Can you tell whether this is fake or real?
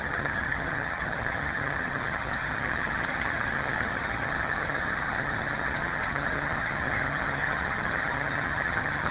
fake